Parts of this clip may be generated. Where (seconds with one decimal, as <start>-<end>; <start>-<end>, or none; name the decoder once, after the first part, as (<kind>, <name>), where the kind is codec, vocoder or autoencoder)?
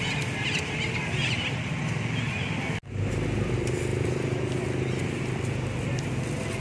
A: none